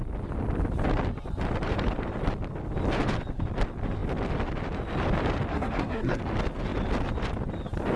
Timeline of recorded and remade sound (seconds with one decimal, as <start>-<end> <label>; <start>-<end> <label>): 0.0-5.5 recorded; 5.5-6.2 remade; 6.2-8.0 recorded